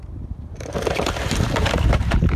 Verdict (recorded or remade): remade